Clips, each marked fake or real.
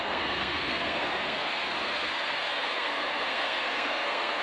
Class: fake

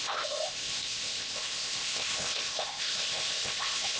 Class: fake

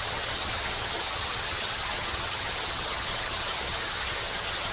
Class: fake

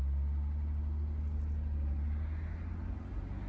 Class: real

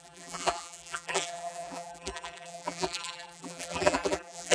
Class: fake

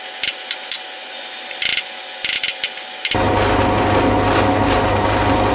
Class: real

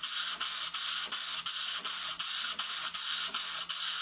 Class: real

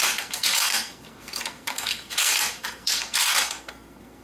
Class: fake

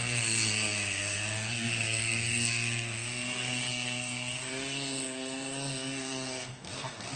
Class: fake